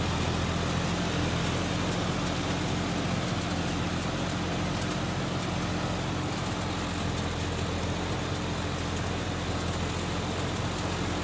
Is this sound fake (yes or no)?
no